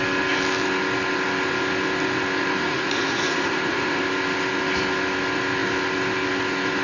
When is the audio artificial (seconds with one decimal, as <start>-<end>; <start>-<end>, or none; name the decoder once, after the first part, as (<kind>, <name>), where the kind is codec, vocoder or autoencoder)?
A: 2.6-4.0 (vocoder, Vocos)

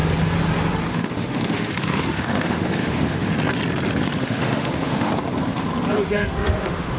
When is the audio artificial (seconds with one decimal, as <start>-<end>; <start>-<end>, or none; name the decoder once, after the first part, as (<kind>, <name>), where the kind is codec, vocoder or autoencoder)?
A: 0.9-3.3 (autoencoder, DAC-VAE); 4.2-5.1; 6.1-7.0

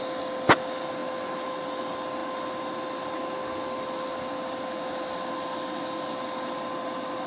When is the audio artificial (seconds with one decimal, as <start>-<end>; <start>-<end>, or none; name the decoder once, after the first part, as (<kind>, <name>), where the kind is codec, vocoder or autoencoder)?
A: none